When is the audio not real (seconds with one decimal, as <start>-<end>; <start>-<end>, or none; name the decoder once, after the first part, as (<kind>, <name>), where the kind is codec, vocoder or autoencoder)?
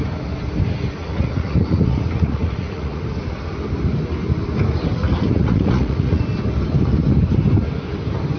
1.0-3.0 (vocoder, Vocos); 5.0-6.2